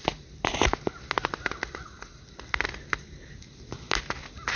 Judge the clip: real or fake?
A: real